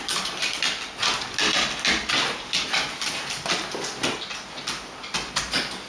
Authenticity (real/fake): real